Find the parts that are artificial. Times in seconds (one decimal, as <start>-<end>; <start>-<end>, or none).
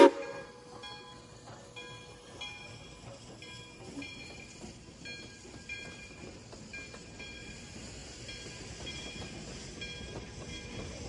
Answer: none